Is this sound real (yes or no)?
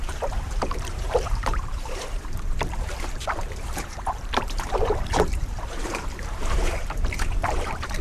no